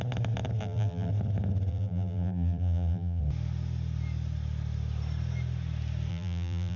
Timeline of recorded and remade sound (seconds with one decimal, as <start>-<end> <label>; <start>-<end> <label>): 0.0-0.6 recorded; 0.6-1.1 remade; 1.1-1.7 recorded; 1.7-3.2 remade; 3.2-6.1 recorded; 6.1-6.8 remade